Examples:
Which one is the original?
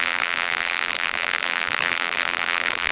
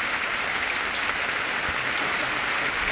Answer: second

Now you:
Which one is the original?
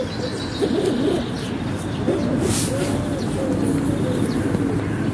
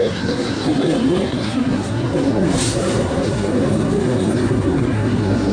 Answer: first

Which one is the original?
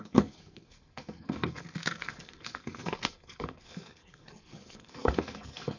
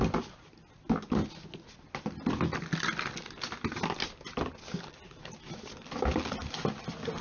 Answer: second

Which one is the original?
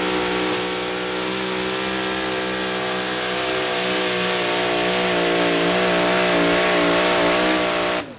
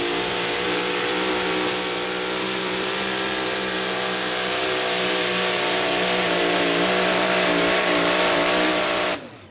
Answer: first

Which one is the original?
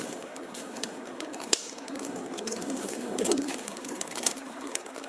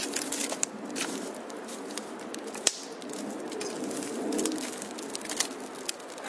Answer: second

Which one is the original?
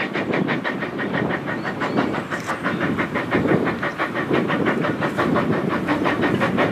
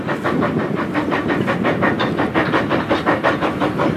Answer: second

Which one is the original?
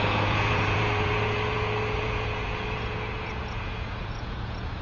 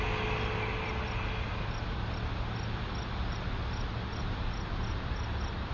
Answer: second